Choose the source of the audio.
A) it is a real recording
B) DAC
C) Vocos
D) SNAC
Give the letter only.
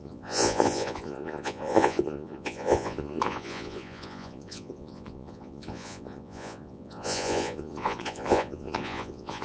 C